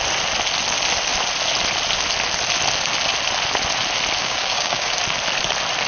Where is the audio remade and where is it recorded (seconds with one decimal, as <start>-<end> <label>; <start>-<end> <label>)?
0.0-4.2 recorded; 4.2-5.0 remade; 5.0-5.9 recorded